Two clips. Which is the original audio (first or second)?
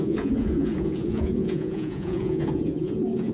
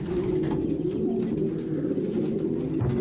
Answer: second